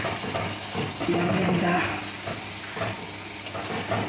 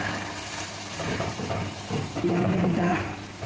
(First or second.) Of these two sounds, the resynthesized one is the second